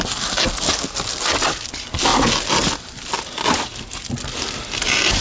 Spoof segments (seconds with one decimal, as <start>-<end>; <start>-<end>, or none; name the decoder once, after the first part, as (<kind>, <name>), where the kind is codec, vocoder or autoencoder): none